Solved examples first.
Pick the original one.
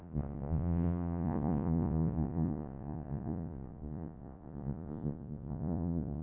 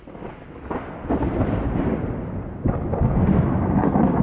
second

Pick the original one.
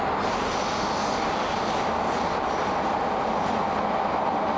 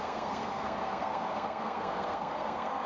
first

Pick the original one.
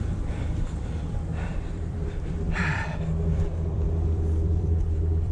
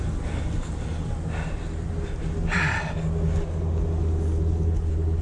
second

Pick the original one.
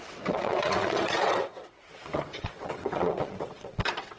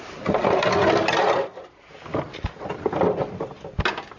second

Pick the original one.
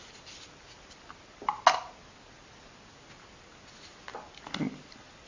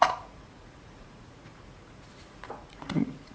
first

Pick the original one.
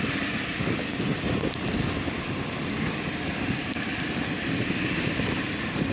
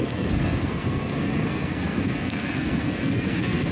first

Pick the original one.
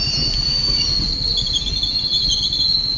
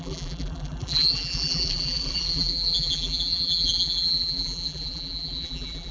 first